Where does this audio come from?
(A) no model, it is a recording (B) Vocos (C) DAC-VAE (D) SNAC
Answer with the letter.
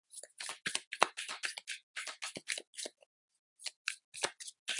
A